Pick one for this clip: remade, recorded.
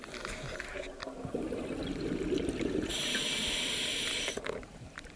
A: recorded